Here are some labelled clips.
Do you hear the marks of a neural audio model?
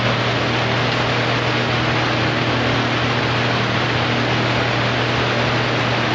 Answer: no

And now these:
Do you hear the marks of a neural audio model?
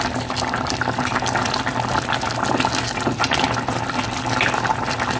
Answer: no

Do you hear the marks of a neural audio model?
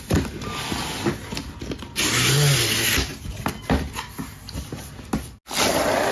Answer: no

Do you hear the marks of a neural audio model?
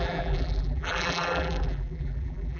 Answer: yes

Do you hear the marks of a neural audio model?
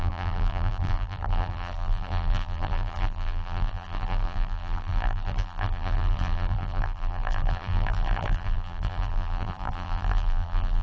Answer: yes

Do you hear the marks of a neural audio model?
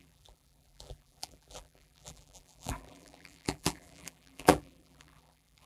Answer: yes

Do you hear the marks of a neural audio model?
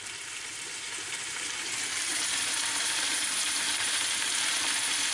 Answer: yes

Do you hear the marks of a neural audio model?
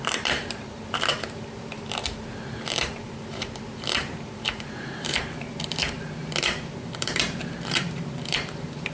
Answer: yes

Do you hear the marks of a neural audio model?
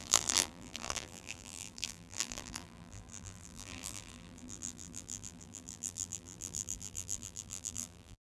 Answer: yes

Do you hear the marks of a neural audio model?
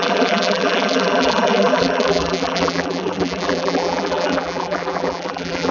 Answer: yes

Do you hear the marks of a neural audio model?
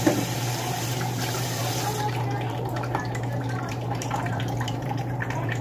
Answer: yes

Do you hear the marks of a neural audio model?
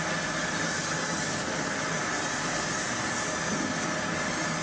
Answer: no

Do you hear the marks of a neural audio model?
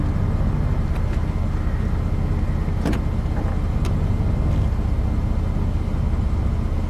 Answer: no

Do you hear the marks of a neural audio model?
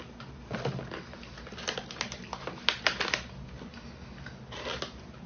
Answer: no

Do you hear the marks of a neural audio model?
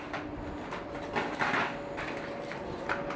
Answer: yes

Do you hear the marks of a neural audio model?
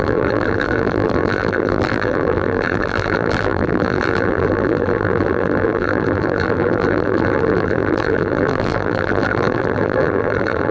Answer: yes